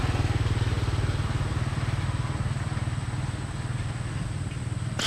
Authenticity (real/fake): real